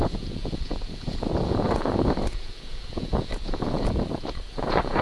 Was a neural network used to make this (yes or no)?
yes